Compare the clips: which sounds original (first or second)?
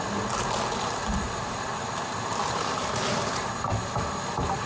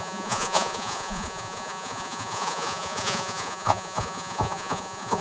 first